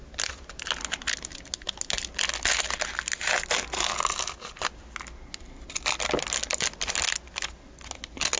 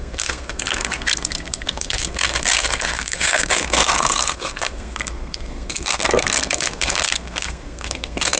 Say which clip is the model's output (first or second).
second